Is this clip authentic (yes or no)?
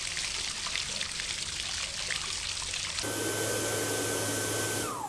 yes